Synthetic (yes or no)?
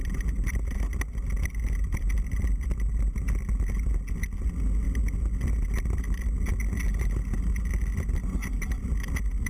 no